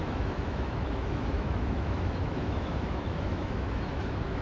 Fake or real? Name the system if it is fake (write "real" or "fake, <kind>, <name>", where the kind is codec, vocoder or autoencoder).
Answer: fake, autoencoder, DAC-VAE